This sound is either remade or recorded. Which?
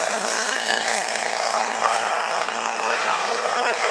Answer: remade